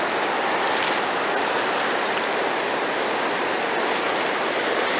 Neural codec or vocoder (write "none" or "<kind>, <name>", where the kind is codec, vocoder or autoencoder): none